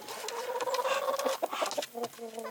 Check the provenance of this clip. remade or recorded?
recorded